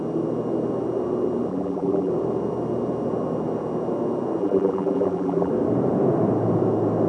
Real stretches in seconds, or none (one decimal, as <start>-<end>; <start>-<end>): 0.0-1.5; 2.1-4.4; 5.5-7.1